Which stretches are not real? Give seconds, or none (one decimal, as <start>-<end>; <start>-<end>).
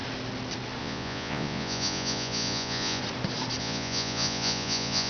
0.8-3.0; 3.6-5.1